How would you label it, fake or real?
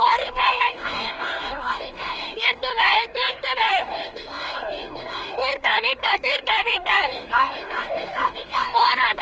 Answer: fake